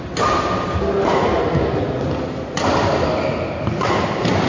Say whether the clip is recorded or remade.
recorded